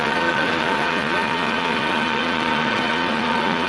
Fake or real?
fake